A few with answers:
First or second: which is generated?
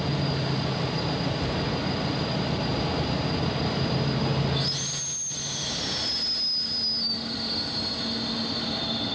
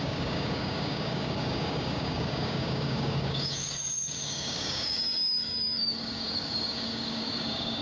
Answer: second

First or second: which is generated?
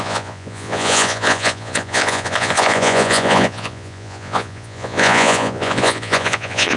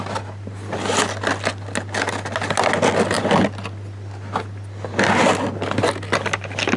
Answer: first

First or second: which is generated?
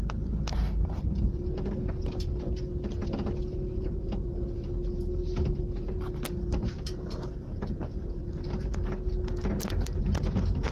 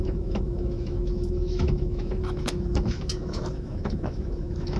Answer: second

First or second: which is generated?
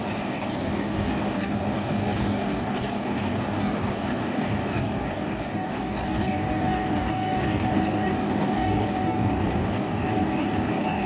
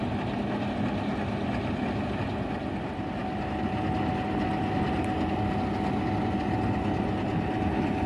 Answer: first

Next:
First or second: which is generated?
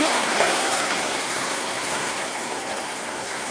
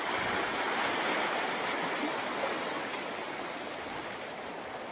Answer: first